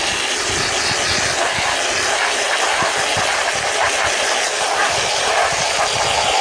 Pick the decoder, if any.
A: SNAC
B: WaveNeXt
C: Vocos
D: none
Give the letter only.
D